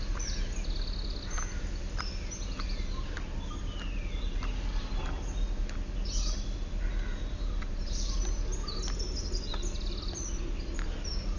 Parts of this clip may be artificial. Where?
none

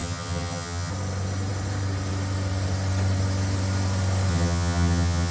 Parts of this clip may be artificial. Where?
0.0-0.9 (vocoder, HiFi-GAN); 4.3-5.3